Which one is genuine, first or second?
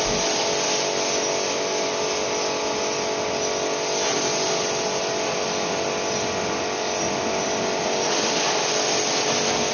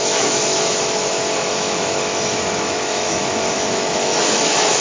first